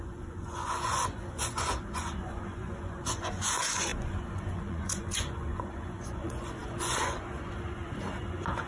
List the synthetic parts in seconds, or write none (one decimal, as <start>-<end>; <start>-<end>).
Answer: 0.0-8.7